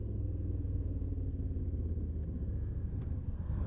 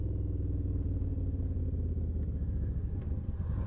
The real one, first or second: second